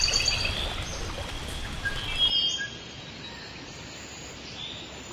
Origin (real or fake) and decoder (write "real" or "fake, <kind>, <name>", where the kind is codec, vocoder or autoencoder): real